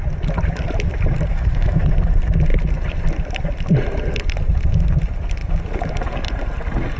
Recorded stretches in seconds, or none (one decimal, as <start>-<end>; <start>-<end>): 0.0-1.3; 1.8-7.0